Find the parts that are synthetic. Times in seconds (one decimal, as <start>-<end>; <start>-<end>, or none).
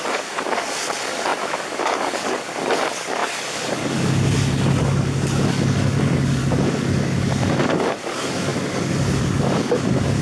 0.0-10.2